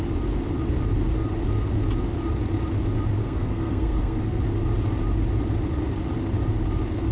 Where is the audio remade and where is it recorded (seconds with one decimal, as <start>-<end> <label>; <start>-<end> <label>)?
0.0-3.2 recorded; 3.2-4.4 remade; 4.4-7.1 recorded